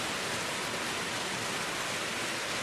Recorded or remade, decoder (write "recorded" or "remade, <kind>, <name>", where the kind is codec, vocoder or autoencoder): recorded